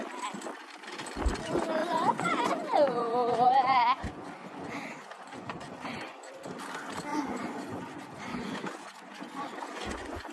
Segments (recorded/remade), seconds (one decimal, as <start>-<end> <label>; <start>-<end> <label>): 0.0-1.8 recorded; 1.8-6.3 remade; 6.3-7.1 recorded; 7.1-10.3 remade